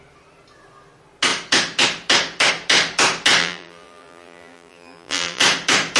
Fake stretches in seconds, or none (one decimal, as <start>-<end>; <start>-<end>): 3.4-5.4

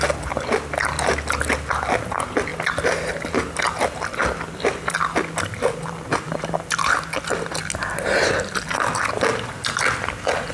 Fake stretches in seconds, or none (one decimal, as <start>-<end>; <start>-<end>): 2.5-4.9

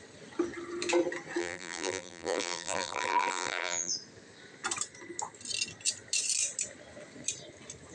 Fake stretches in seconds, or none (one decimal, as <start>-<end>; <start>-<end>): 1.4-3.9

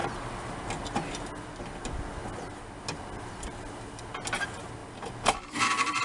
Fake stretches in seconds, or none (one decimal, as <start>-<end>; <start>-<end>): 4.8-6.0